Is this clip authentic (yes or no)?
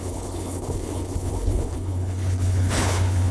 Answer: no